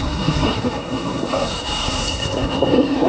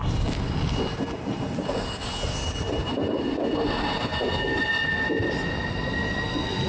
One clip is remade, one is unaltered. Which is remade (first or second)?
first